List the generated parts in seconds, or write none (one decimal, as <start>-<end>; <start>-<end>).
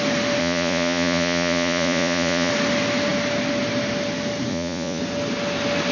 0.4-2.5; 4.5-5.0